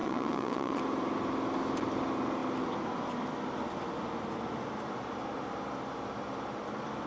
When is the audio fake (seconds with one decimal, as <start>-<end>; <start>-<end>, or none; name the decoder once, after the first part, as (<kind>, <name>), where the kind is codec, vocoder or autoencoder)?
0.0-0.8 (vocoder, WaveNeXt)

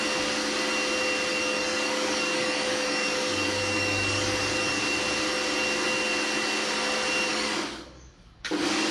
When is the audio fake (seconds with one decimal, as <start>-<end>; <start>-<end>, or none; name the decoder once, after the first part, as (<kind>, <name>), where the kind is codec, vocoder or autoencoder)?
1.3-4.8 (codec, DAC); 7.3-8.9

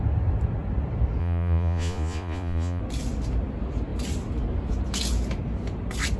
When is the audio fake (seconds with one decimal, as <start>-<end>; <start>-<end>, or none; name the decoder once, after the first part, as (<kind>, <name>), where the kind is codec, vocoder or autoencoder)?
1.2-2.8 (vocoder, Vocos)

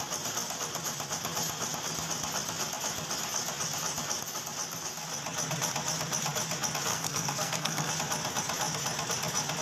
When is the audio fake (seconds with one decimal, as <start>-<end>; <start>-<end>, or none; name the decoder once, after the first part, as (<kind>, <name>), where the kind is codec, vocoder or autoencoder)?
6.9-7.9 (codec, SNAC)

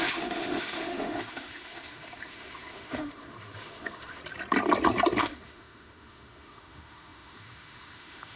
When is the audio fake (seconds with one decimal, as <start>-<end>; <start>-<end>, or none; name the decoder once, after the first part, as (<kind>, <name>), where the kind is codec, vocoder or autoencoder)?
0.0-4.2 (autoencoder, DAC-VAE); 5.2-8.4

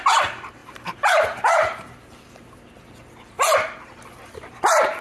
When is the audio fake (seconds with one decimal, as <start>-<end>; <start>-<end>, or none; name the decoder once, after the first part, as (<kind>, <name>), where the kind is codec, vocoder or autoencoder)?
0.6-2.4 (vocoder, BigVGAN v2)

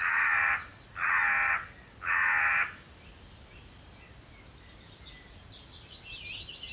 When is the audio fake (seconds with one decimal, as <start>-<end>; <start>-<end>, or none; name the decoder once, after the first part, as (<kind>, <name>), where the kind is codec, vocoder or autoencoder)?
none